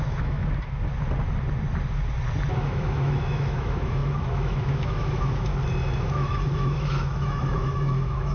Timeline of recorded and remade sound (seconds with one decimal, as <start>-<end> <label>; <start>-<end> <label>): 0.0-0.4 remade; 0.4-2.5 recorded; 2.5-5.5 remade; 5.5-6.0 recorded; 6.0-8.3 remade